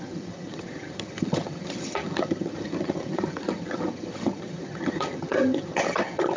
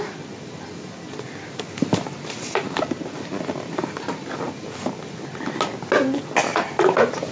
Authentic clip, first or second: second